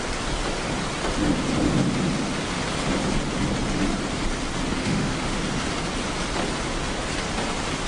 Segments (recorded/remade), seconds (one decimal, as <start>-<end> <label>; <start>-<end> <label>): 0.0-4.8 recorded; 4.8-5.4 remade; 5.4-7.9 recorded